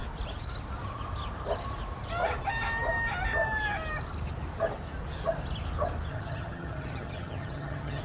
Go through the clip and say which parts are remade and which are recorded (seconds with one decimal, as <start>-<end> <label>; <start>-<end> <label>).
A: 0.0-6.1 recorded; 6.1-8.0 remade